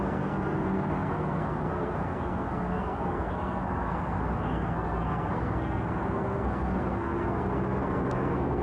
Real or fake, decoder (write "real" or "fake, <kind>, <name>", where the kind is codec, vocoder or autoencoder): fake, codec, SNAC